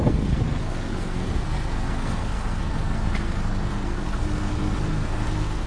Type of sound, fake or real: fake